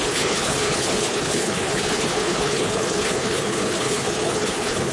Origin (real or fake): fake